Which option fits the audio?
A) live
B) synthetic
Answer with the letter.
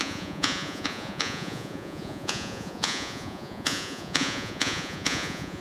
B